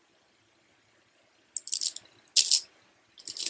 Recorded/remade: recorded